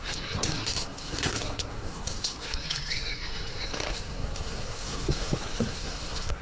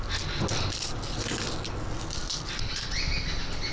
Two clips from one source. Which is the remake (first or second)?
first